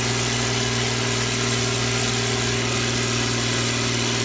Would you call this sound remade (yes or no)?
no